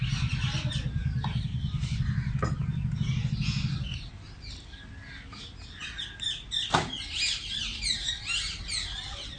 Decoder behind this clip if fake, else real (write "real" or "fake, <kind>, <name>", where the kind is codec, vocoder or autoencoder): real